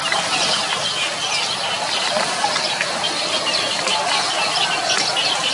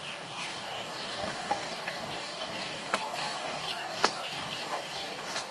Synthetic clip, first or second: second